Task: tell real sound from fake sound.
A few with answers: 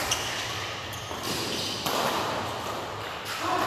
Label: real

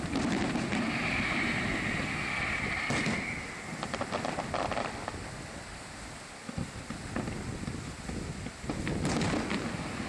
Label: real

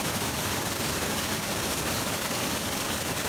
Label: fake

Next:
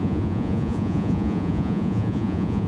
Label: fake